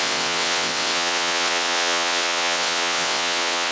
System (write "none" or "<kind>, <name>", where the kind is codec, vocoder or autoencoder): vocoder, WaveNeXt